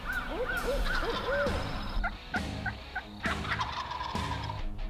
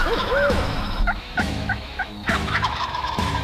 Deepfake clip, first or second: second